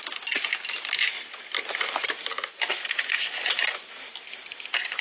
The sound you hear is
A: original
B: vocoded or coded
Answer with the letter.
A